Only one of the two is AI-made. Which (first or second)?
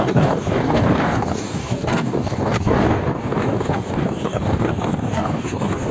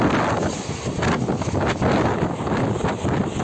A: first